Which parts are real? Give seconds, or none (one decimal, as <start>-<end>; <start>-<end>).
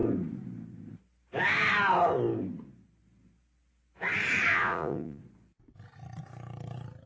0.0-4.5; 5.2-7.1